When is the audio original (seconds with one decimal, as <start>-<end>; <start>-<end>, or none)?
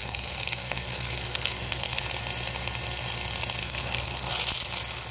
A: 2.0-3.6; 4.3-5.1